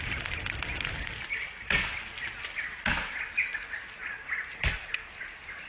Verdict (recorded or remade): recorded